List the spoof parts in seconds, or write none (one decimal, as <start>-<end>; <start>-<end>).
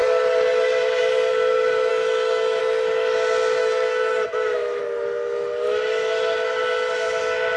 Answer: 1.9-2.6; 3.6-4.8